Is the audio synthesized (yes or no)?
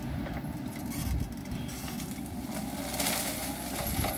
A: no